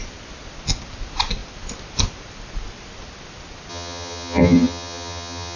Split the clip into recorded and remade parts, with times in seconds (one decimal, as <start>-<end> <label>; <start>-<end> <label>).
0.0-3.7 recorded; 3.7-5.6 remade